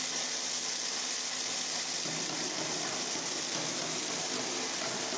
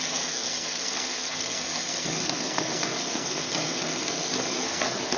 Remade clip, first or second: second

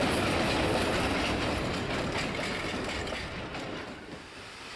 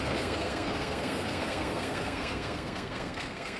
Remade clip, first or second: second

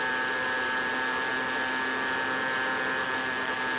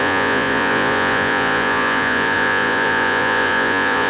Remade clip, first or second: second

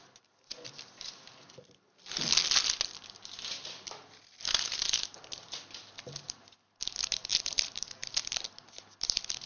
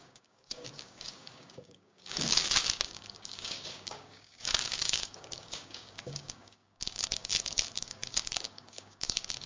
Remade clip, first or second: second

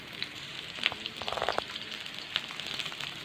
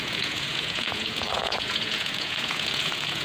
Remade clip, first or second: second